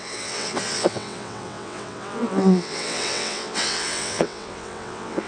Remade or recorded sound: remade